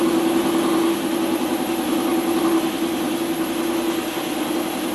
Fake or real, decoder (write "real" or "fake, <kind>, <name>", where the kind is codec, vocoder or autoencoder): real